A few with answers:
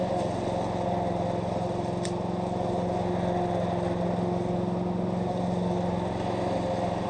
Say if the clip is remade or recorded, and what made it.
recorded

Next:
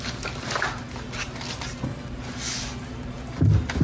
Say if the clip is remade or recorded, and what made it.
recorded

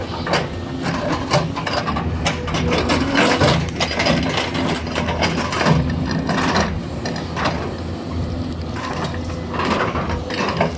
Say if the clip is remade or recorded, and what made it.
recorded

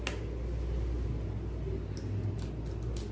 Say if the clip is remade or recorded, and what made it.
recorded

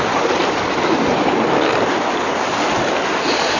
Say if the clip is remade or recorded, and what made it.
recorded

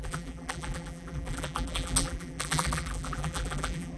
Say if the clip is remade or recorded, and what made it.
remade, vocoder, BigVGAN v2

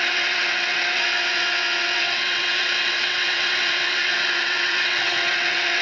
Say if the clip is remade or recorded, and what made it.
remade, vocoder, WaveNeXt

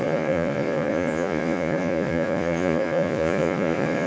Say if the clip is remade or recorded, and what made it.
remade, vocoder, Vocos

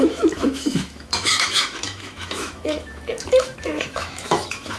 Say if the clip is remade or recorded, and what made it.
remade, autoencoder, DAC-VAE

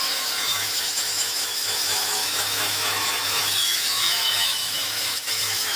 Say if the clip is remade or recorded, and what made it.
remade, autoencoder, DAC-VAE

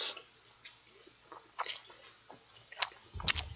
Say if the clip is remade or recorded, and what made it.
recorded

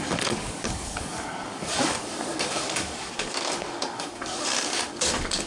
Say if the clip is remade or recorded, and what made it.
remade, codec, DAC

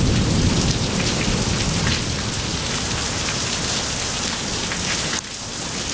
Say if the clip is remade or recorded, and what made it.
recorded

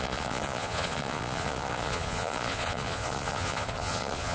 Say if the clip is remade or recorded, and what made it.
remade, vocoder, Vocos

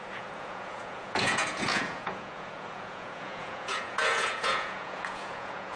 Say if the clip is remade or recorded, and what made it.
remade, vocoder, Vocos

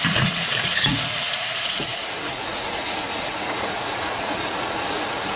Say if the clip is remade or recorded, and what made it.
remade, vocoder, Vocos